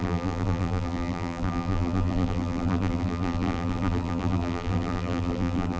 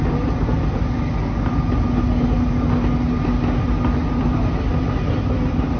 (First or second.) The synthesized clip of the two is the first